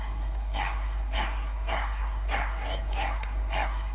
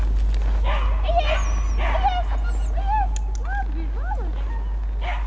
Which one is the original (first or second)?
second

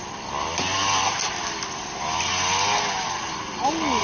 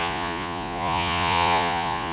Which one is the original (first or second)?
first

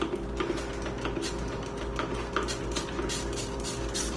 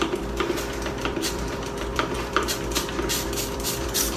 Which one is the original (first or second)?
first